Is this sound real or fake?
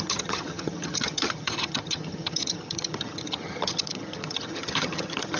fake